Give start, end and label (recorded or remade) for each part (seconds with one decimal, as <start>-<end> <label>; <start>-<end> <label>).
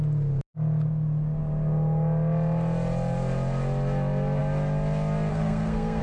0.0-5.3 recorded; 5.3-6.0 remade